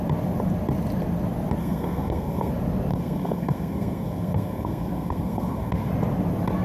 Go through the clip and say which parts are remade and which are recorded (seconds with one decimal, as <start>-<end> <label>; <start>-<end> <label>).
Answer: 0.0-1.6 recorded; 1.6-2.5 remade; 2.5-2.9 recorded; 2.9-5.9 remade; 5.9-6.6 recorded